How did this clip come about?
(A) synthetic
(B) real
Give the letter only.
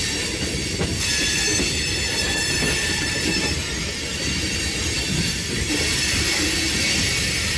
B